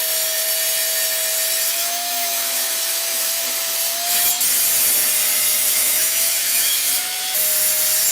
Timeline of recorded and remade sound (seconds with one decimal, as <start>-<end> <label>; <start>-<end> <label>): 0.0-1.8 recorded; 1.8-3.4 remade; 3.4-5.6 recorded; 5.6-7.2 remade; 7.2-8.1 recorded